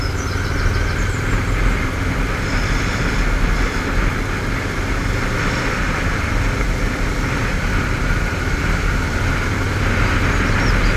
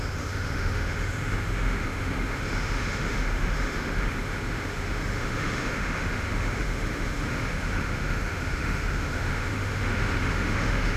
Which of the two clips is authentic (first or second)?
first